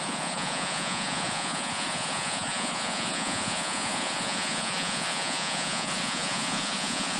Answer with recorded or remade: remade